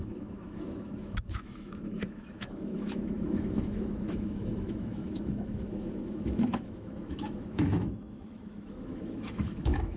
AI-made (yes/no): yes